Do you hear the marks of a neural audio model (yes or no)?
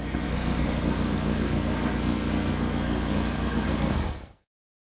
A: yes